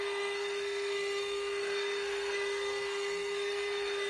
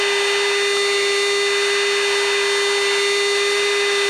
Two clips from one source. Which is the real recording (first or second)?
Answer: second